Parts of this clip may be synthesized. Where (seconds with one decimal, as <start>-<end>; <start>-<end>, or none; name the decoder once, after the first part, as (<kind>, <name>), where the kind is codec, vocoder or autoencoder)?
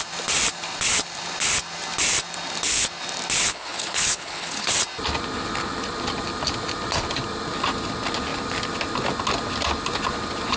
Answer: 3.5-4.7 (codec, HILCodec)